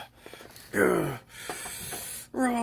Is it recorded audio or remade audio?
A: recorded